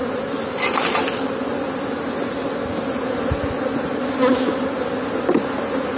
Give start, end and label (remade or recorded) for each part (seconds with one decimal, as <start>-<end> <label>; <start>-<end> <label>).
0.0-6.0 recorded